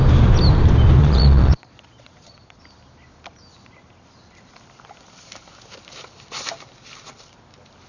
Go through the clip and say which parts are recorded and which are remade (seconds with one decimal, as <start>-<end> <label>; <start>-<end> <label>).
0.0-1.0 recorded; 1.0-2.6 remade; 2.6-7.9 recorded